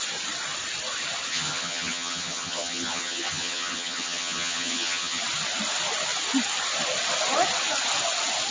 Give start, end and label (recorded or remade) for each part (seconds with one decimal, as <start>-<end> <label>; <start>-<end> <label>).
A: 0.0-1.3 recorded; 1.3-5.2 remade; 5.2-8.5 recorded